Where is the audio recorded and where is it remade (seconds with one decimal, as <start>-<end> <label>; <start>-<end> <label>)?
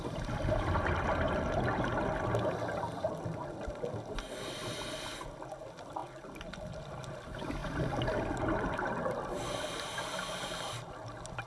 0.0-11.5 recorded